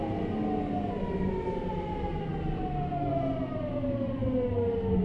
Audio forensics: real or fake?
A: real